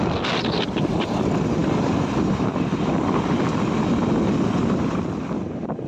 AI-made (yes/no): no